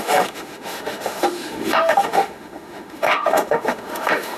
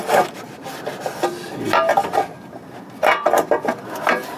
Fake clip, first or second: first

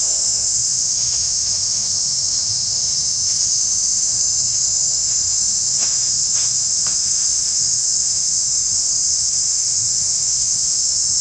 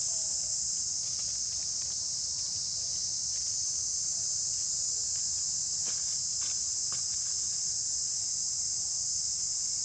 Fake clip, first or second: first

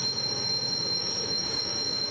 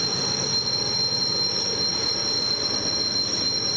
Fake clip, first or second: first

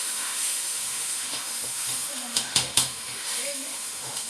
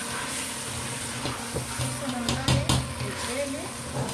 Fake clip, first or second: first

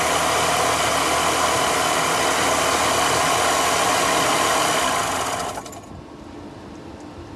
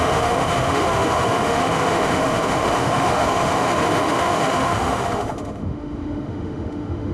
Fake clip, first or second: second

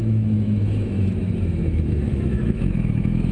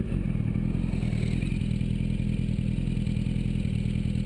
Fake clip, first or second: first